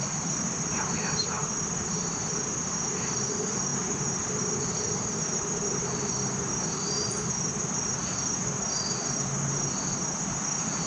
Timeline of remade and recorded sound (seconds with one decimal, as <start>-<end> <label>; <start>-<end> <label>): 0.0-10.9 recorded

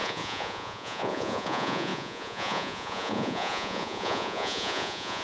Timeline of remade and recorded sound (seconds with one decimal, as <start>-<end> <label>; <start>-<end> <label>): 0.0-5.2 remade

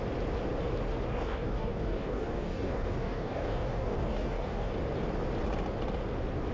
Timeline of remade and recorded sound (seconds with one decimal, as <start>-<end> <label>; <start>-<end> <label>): 0.0-1.1 recorded; 1.1-4.7 remade; 4.7-6.5 recorded